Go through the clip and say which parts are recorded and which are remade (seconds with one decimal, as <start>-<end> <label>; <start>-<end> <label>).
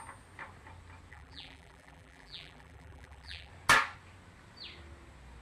0.0-1.1 recorded; 1.1-3.5 remade; 3.5-5.4 recorded